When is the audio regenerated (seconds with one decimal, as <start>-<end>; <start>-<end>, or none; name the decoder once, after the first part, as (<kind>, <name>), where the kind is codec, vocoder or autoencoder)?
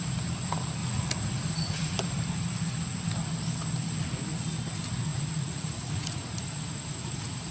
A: 0.8-2.0 (vocoder, Vocos); 5.1-7.5